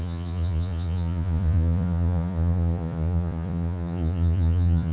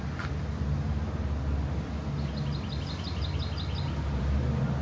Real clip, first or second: second